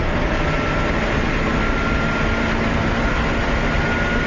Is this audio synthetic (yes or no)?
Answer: no